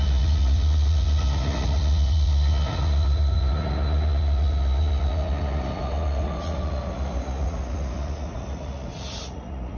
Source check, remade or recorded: remade